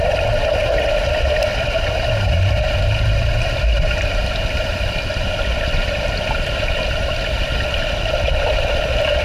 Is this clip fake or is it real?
real